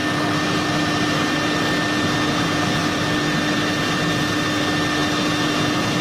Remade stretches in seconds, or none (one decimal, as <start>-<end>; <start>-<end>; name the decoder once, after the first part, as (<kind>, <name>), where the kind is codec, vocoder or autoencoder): none